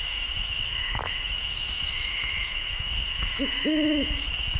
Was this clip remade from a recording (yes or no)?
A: yes